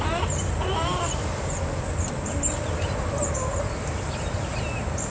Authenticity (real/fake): real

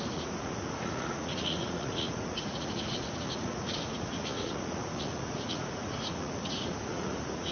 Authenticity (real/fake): fake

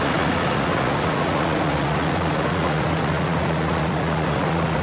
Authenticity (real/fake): fake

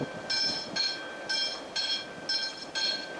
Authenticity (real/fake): real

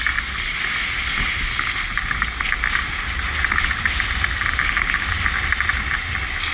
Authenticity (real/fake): real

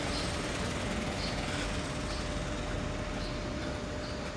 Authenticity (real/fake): real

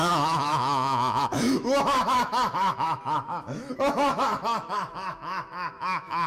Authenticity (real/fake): fake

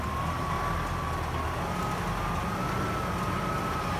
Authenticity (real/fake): real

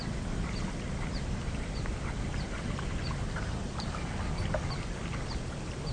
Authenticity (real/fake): real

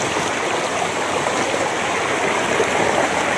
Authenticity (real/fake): real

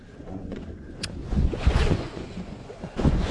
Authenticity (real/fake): fake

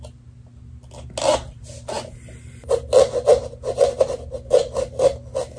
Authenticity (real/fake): real